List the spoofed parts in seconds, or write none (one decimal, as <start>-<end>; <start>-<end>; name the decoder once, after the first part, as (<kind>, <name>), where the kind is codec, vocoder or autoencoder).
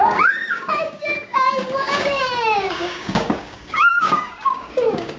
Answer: 0.0-5.2 (codec, DAC)